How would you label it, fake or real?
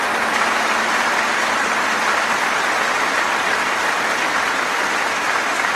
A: real